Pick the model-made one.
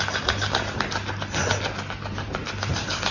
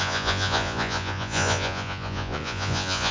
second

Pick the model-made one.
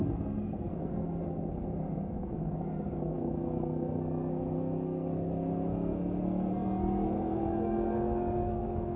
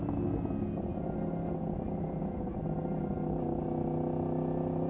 first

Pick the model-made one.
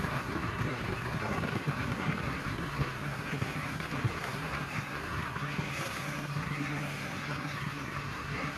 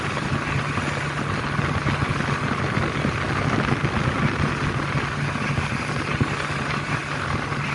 first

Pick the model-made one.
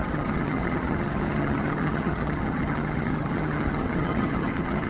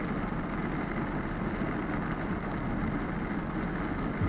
first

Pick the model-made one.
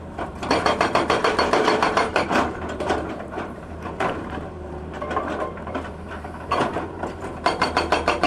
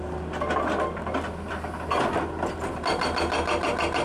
first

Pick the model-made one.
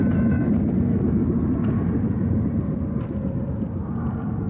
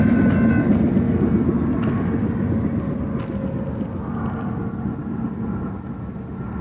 first